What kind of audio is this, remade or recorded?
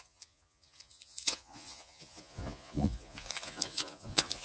remade